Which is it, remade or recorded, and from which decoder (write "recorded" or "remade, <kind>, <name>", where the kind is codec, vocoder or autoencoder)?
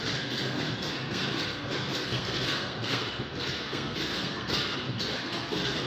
remade, codec, SNAC